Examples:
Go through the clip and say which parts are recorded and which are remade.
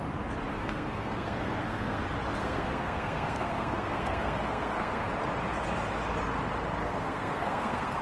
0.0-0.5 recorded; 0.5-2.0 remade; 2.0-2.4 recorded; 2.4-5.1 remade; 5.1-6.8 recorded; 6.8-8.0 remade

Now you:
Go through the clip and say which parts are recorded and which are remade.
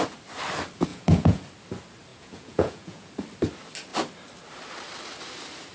0.0-0.9 recorded; 0.9-1.4 remade; 1.4-2.1 recorded; 2.1-3.1 remade; 3.1-5.7 recorded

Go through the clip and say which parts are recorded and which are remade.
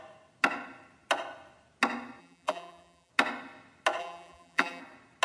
0.0-2.2 recorded; 2.2-3.1 remade; 3.1-4.0 recorded; 4.0-4.8 remade; 4.8-5.2 recorded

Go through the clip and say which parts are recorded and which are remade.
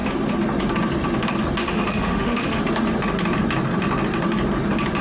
0.0-1.6 recorded; 1.6-2.6 remade; 2.6-5.0 recorded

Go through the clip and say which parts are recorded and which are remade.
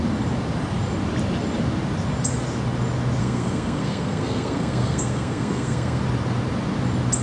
0.0-3.2 recorded; 3.2-6.0 remade; 6.0-7.2 recorded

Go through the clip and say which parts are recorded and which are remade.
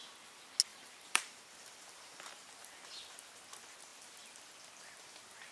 0.0-0.7 recorded; 0.7-2.5 remade; 2.5-5.5 recorded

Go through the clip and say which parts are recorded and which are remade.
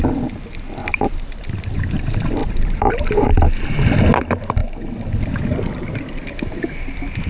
0.0-2.4 recorded; 2.4-2.9 remade; 2.9-7.3 recorded